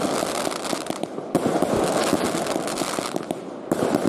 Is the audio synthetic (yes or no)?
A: no